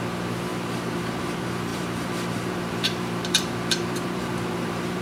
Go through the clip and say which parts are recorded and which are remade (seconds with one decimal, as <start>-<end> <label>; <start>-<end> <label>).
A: 0.0-5.0 remade